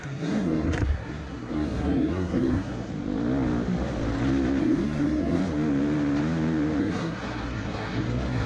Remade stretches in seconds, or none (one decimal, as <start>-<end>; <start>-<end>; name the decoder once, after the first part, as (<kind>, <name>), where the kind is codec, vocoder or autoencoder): 0.0-2.9 (codec, SNAC); 4.6-5.4; 6.8-8.5